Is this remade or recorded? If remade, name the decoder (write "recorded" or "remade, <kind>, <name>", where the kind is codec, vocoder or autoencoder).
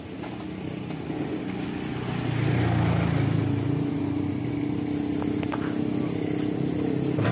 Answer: recorded